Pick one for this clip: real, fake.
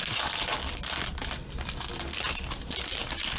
real